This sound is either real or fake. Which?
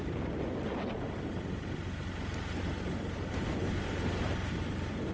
real